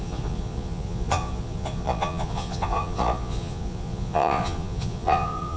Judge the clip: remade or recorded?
remade